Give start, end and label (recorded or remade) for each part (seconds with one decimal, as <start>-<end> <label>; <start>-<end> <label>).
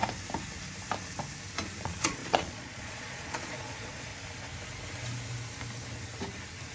0.0-1.8 recorded; 1.8-4.1 remade; 4.1-6.7 recorded